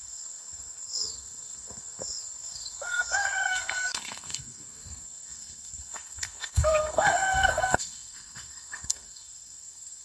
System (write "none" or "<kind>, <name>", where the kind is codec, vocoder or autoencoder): codec, SNAC